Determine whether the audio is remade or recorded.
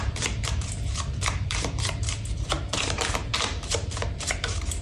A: remade